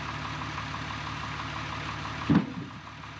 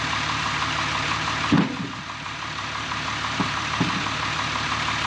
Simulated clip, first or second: second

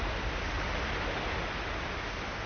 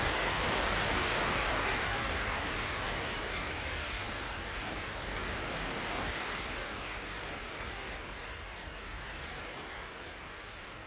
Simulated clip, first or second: second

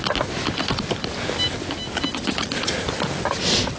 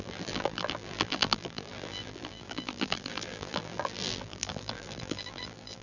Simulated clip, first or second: second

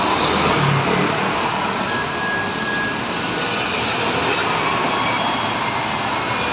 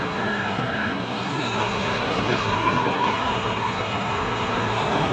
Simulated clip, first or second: second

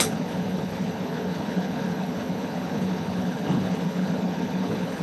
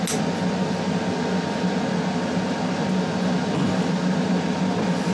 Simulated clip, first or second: first